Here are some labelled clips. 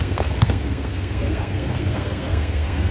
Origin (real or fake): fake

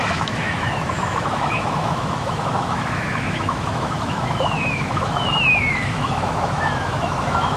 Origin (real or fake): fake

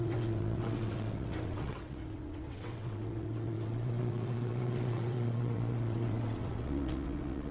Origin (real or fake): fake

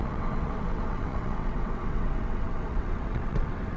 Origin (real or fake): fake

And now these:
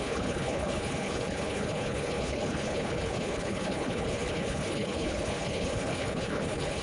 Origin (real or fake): fake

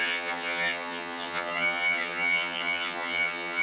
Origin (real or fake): fake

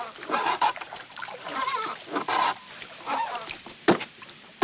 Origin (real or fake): fake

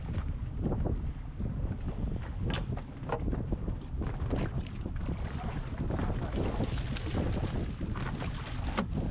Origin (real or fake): real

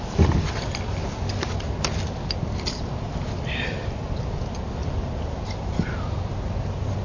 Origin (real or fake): real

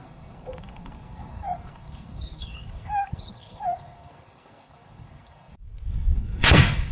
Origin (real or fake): fake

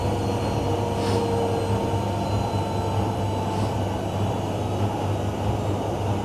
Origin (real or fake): real